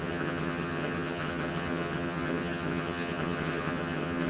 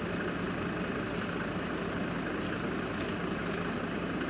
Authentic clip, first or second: second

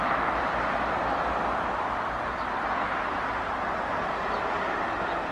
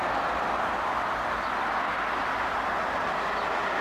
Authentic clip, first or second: second